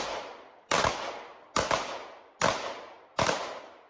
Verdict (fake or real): real